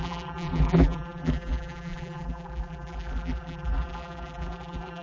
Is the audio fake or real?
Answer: fake